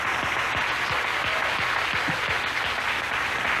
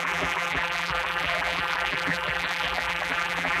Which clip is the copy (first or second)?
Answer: second